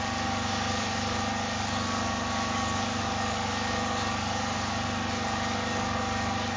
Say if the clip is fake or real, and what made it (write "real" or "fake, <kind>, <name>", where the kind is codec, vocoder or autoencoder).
fake, codec, DAC